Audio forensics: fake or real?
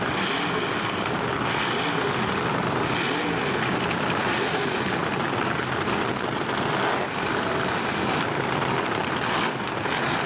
real